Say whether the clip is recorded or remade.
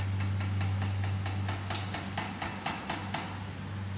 recorded